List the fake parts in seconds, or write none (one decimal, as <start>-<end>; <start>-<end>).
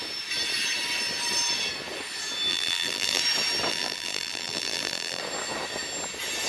2.5-3.2; 3.7-5.2